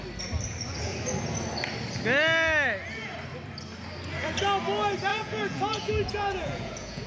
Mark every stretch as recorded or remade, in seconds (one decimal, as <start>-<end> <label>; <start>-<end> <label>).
0.0-5.1 recorded; 5.1-7.1 remade